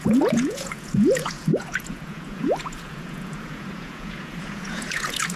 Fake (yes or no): yes